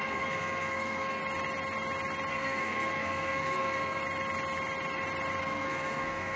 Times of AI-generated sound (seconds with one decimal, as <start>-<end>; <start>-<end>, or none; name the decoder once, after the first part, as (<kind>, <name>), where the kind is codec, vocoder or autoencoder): 0.0-1.2 (codec, SNAC); 2.3-4.0; 5.4-6.4